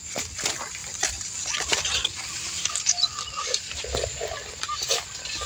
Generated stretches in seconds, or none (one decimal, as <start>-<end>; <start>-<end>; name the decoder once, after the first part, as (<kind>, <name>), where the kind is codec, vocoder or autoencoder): none